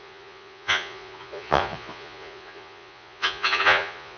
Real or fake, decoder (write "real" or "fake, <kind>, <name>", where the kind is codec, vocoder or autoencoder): fake, vocoder, Vocos